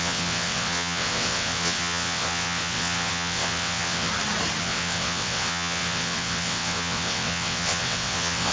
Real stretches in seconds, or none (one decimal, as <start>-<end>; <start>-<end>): 4.1-4.6